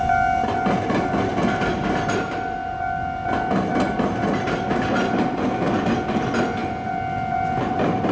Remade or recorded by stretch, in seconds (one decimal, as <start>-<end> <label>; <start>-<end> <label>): 0.0-8.1 recorded